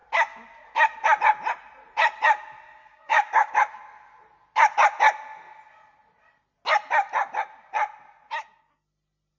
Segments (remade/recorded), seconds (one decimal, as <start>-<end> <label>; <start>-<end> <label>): 0.0-2.8 recorded; 2.8-3.5 remade; 3.5-9.4 recorded